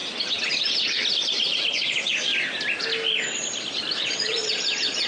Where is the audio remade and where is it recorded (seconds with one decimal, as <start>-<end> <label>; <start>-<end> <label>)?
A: 0.0-0.6 recorded; 0.6-1.0 remade; 1.0-1.7 recorded; 1.7-2.3 remade; 2.3-4.0 recorded; 4.0-5.1 remade

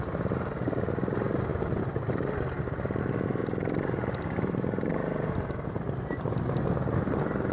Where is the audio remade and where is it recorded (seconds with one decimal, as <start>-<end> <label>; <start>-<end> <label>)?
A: 0.0-7.5 recorded

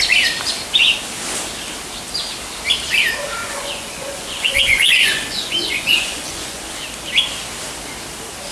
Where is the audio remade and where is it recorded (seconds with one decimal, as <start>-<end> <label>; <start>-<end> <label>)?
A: 0.0-3.4 recorded; 3.4-6.6 remade; 6.6-8.5 recorded

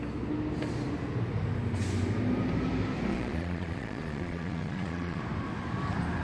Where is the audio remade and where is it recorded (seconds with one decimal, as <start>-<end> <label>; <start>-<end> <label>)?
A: 0.0-3.1 recorded; 3.1-5.2 remade; 5.2-6.2 recorded

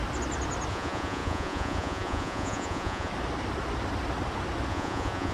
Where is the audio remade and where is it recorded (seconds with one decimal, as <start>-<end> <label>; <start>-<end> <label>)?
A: 0.0-0.7 recorded; 0.7-3.1 remade; 3.1-4.7 recorded; 4.7-5.3 remade

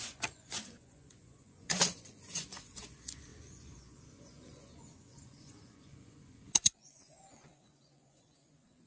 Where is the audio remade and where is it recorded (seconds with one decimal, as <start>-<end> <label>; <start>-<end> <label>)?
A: 0.0-8.9 remade

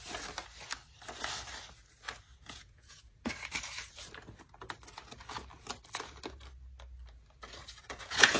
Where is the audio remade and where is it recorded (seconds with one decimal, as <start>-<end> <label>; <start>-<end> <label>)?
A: 0.0-2.3 recorded; 2.3-3.3 remade; 3.3-7.6 recorded; 7.6-8.4 remade